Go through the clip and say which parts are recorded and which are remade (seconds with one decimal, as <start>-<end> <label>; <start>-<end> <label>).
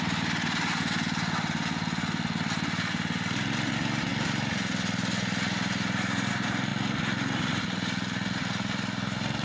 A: 0.0-9.4 recorded